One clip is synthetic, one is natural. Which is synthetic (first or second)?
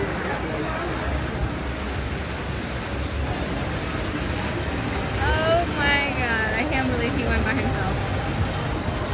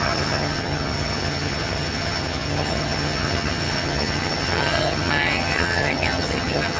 second